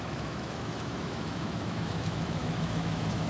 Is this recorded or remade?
remade